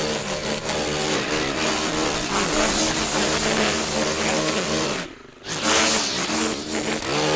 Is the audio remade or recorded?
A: recorded